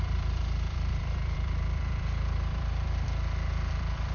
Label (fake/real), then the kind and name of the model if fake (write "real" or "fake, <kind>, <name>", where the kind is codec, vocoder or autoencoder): fake, vocoder, BigVGAN v2